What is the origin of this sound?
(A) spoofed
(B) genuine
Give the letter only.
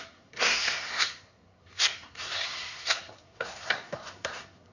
A